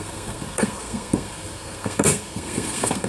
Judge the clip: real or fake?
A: fake